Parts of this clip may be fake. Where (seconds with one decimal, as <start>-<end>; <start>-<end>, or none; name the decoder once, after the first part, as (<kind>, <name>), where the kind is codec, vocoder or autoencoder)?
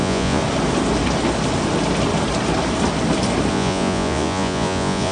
0.0-0.4 (vocoder, Vocos); 3.5-5.1